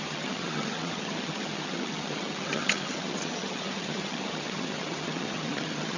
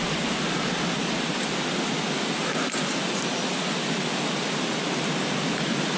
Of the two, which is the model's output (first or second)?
first